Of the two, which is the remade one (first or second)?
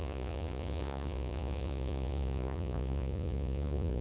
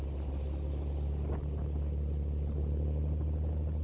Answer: first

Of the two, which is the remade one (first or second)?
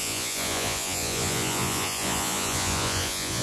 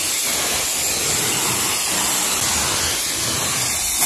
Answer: first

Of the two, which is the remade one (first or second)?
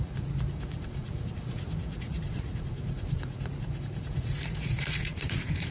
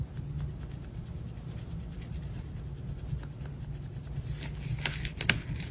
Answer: first